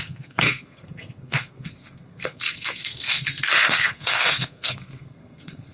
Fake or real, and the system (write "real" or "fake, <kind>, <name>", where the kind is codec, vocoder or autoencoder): fake, codec, SNAC